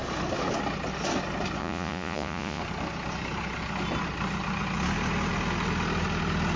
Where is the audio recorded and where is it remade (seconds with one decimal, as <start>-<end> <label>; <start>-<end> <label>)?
0.0-1.6 recorded; 1.6-2.6 remade; 2.6-6.6 recorded